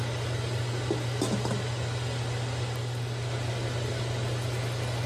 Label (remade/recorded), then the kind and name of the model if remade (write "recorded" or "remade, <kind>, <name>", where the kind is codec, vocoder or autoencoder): recorded